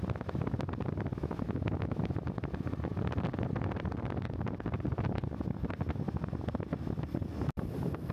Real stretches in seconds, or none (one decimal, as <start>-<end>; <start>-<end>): 0.0-1.1; 2.1-8.1